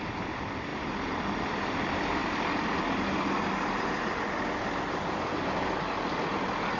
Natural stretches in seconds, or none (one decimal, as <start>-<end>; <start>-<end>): 0.0-6.8